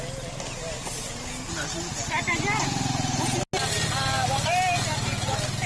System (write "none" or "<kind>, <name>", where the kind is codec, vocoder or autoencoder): none